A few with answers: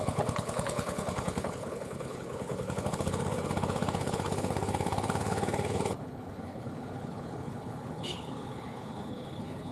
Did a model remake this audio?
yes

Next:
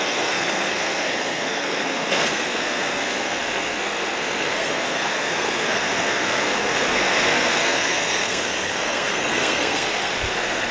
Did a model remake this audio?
yes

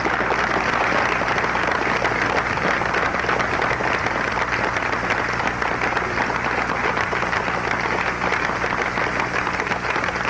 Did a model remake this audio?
no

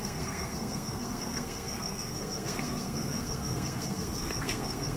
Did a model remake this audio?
yes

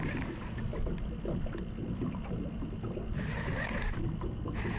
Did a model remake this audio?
no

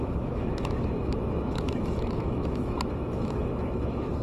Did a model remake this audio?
yes